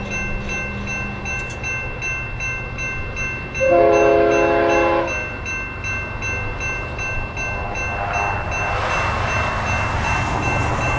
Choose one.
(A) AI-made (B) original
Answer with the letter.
B